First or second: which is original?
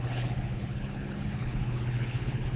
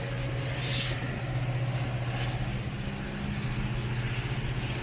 second